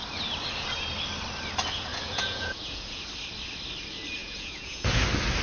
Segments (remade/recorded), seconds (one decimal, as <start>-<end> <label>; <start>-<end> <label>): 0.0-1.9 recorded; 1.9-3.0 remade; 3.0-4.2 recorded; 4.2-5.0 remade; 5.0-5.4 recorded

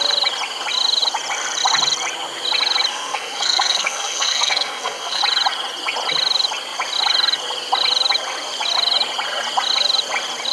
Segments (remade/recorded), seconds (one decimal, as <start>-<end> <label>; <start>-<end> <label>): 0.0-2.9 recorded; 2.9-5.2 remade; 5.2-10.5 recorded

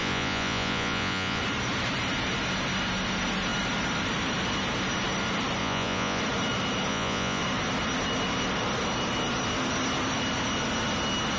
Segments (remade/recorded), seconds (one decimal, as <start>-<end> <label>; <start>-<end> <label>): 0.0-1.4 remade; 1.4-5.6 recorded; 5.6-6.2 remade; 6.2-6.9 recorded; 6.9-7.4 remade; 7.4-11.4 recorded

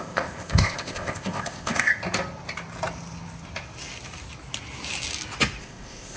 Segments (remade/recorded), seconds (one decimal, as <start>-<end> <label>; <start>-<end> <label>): 0.0-1.9 remade; 1.9-5.6 recorded; 5.6-6.2 remade

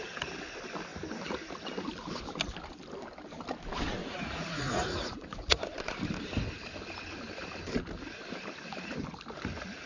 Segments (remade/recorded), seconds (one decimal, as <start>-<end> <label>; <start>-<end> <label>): 0.0-4.0 recorded; 4.0-5.6 remade; 5.6-9.9 recorded

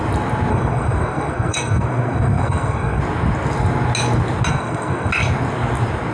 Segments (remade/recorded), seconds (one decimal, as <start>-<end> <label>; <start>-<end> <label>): 0.0-0.5 recorded; 0.5-3.0 remade; 3.0-4.5 recorded; 4.5-5.1 remade; 5.1-6.1 recorded

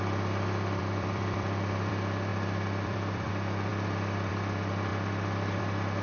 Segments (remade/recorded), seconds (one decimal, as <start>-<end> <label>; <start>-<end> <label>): 0.0-0.8 recorded; 0.8-1.9 remade; 1.9-2.3 recorded; 2.3-3.3 remade; 3.3-6.0 recorded

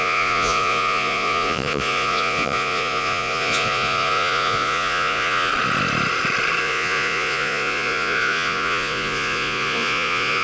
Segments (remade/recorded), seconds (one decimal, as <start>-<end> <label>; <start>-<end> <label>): 0.0-5.5 remade; 5.5-6.6 recorded; 6.6-10.4 remade